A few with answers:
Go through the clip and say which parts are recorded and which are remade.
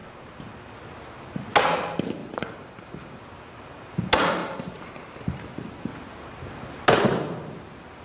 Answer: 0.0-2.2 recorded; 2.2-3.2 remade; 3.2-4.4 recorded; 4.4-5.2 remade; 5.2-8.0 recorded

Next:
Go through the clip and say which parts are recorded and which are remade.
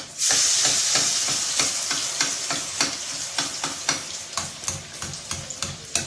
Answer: 0.0-6.1 recorded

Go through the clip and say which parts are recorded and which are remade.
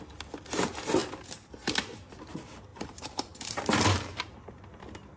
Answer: 0.0-1.0 recorded; 1.0-1.5 remade; 1.5-2.7 recorded; 2.7-4.7 remade; 4.7-5.2 recorded